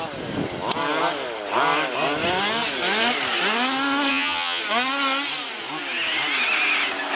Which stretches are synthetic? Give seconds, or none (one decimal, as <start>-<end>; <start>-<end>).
4.1-4.6